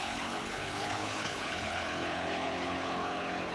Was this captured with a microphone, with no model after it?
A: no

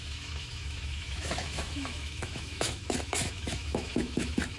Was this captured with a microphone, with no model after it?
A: no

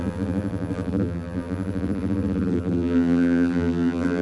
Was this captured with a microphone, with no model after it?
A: no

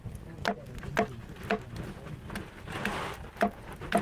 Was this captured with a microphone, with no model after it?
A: yes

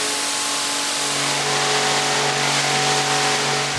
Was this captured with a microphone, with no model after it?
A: yes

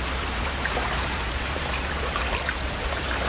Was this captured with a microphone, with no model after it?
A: no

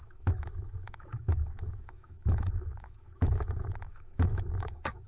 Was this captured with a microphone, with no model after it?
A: no